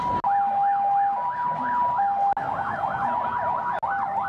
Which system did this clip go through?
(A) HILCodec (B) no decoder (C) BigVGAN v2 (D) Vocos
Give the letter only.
B